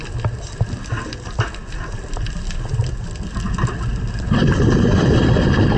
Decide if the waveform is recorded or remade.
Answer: recorded